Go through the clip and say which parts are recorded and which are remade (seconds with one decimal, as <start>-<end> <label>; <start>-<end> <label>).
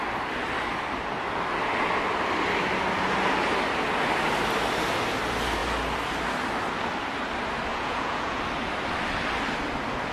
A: 0.0-7.7 recorded; 7.7-8.4 remade; 8.4-10.1 recorded